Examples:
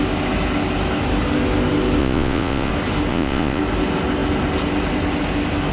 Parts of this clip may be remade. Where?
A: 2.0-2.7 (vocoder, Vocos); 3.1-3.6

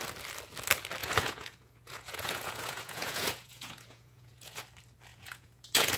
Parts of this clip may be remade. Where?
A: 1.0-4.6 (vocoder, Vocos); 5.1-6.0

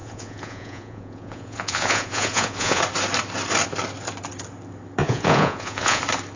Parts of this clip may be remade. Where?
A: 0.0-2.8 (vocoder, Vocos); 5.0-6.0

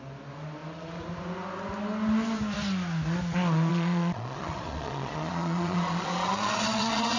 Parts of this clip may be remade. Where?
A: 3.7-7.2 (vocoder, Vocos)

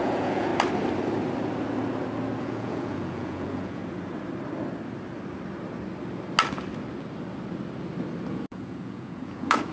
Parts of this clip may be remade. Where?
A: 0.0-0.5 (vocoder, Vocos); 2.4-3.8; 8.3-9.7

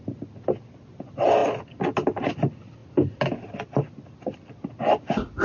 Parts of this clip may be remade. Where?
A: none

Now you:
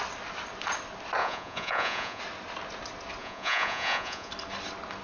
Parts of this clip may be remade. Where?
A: 1.2-2.2 (vocoder, Vocos); 3.2-4.3